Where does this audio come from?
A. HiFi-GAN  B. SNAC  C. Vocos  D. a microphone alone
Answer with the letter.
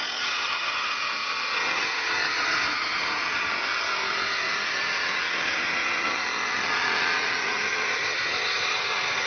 A